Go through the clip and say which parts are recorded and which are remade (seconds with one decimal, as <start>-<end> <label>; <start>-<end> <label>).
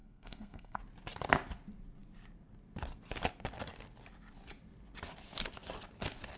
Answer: 0.0-0.8 remade; 0.8-6.4 recorded